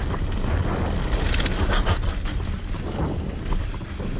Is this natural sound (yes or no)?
yes